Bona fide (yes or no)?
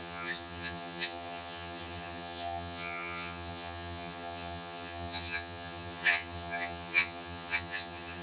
no